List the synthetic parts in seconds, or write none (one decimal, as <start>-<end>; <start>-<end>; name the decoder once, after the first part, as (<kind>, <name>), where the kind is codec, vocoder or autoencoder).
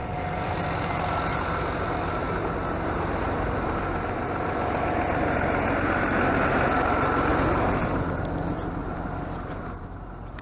2.2-4.5 (vocoder, BigVGAN v2); 7.3-8.2; 8.8-10.4